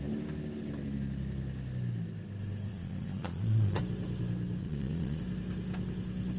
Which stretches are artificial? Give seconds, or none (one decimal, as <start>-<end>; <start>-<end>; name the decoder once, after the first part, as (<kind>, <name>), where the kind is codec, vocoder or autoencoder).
2.7-3.8 (vocoder, Vocos); 4.6-5.2